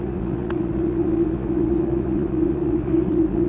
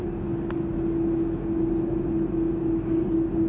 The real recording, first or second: second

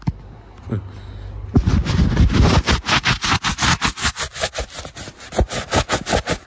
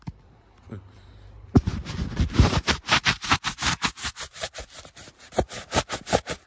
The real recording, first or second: first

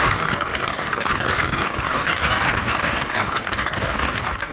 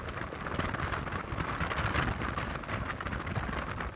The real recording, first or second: second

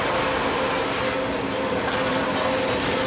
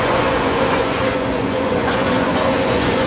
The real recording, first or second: first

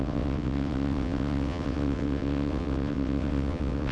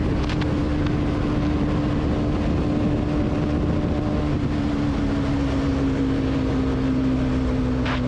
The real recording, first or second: second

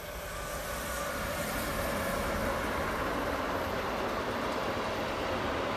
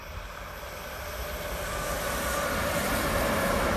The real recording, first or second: first